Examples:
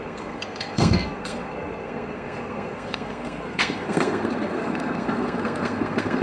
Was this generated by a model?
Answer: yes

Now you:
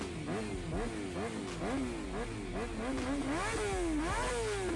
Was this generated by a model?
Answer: no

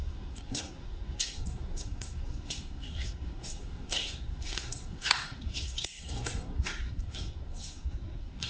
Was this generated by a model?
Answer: yes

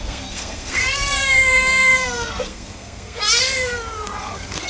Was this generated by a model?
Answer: yes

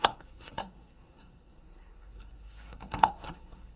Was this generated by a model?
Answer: yes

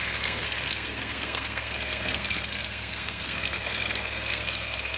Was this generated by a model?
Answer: yes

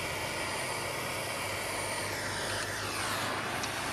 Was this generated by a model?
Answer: no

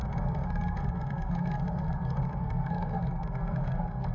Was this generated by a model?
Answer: yes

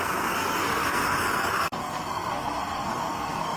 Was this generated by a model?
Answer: yes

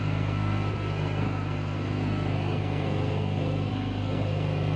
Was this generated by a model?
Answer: yes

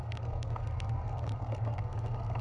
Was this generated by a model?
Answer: yes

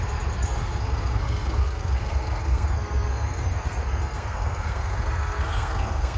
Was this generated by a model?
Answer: yes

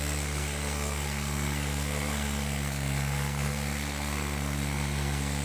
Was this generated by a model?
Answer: yes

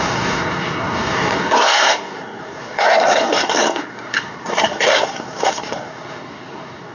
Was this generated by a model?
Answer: yes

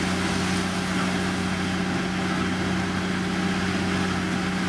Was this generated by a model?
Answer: no